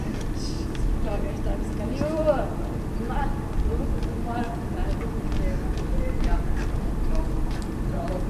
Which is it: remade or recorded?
recorded